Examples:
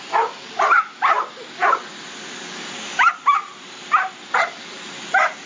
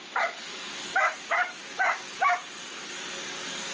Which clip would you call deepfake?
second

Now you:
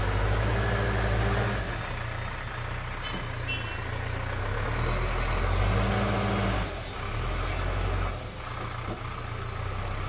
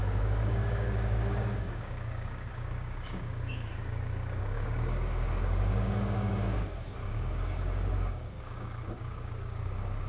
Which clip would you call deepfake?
second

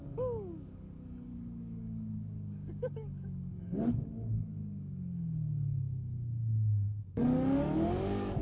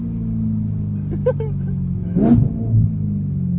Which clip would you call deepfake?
first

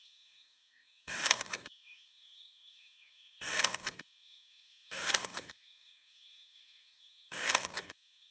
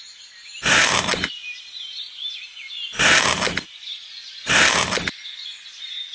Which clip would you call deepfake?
first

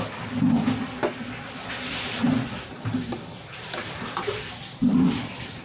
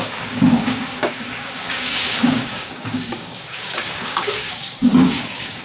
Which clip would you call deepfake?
second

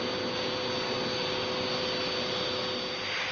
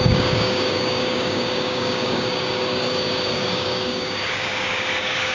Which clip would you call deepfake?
second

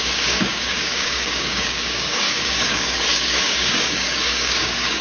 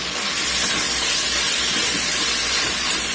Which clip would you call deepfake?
first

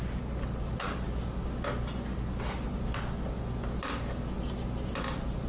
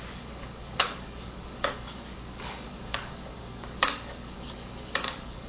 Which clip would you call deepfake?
second